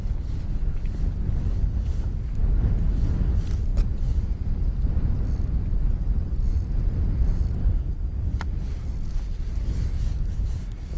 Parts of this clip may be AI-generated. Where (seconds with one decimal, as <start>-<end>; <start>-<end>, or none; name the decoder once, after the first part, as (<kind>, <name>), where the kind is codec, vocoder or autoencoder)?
none